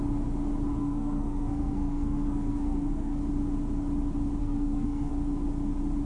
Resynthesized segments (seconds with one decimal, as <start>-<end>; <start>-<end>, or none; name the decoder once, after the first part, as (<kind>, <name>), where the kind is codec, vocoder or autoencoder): 0.7-3.2 (codec, SNAC); 4.4-5.1